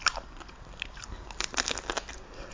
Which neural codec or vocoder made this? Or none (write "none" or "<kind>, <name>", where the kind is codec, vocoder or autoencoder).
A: none